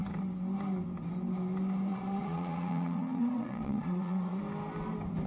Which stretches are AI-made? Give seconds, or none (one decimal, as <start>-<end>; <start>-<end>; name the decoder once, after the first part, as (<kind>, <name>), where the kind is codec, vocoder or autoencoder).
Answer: 1.9-4.4 (vocoder, Vocos)